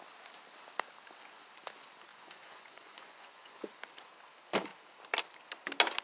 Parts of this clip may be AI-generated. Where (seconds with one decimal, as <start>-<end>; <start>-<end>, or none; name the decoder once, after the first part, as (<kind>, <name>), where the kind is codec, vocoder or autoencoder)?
2.1-3.6 (vocoder, Vocos)